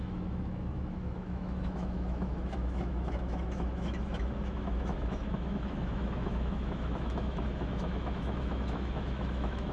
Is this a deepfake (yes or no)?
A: yes